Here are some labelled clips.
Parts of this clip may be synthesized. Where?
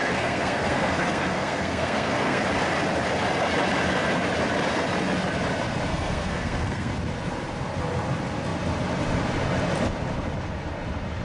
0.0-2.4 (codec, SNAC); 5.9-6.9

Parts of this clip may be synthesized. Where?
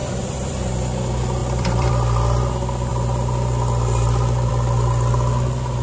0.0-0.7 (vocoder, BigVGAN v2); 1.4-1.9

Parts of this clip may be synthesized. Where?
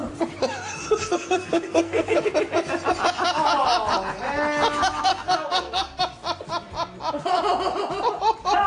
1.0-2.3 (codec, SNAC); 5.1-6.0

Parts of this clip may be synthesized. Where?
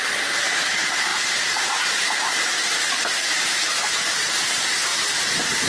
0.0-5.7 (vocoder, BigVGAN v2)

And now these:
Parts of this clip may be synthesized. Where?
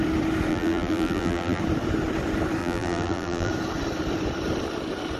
0.5-1.6 (vocoder, BigVGAN v2); 2.6-3.5